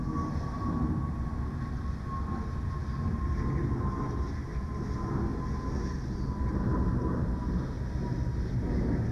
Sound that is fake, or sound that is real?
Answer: real